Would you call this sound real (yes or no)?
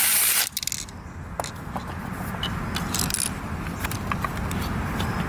yes